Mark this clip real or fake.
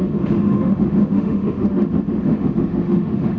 fake